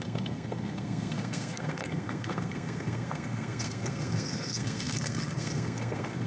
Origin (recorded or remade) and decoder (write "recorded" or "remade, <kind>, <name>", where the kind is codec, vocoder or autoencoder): remade, codec, SNAC